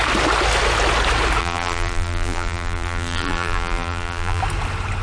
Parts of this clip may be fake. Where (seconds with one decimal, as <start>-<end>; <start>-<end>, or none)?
1.4-4.4